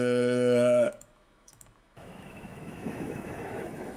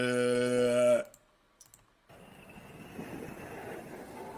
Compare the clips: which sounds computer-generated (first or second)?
first